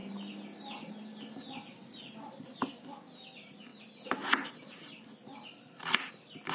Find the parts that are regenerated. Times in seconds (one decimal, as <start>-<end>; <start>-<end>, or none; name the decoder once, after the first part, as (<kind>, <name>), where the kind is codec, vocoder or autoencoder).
none